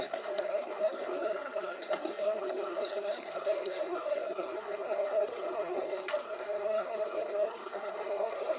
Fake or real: fake